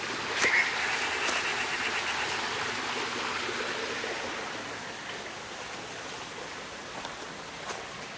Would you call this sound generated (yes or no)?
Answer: no